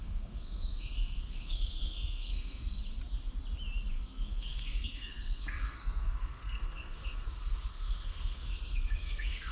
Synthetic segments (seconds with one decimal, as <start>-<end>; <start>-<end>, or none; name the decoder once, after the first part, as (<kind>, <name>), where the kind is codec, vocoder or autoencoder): 0.0-2.8 (codec, SNAC); 3.9-9.5